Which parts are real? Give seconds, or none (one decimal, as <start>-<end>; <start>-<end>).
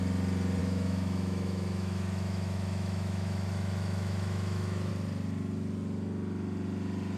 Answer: 0.0-0.6; 4.9-7.2